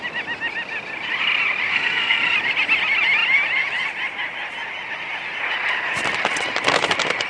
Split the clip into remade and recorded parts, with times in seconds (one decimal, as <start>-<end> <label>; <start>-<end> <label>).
0.0-1.7 recorded; 1.7-2.2 remade; 2.2-7.3 recorded